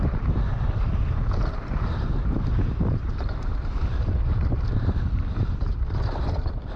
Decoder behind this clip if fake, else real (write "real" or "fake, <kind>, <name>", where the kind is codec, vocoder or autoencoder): fake, vocoder, BigVGAN v2